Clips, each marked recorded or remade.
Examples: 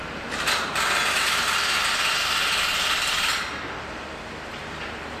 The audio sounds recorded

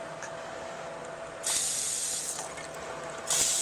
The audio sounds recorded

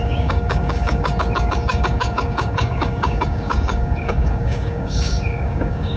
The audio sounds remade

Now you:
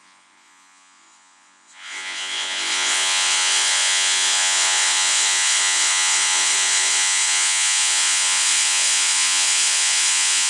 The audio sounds remade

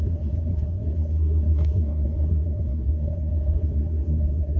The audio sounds remade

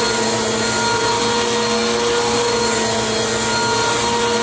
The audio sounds recorded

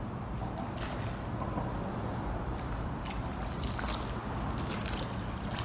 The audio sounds recorded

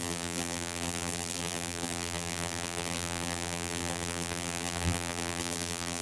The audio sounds remade